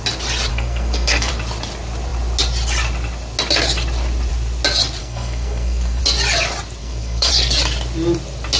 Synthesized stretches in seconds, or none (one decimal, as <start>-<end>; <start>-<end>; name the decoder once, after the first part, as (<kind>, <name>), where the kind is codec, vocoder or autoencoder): 0.5-1.3 (codec, SNAC); 5.0-6.0; 6.8-7.3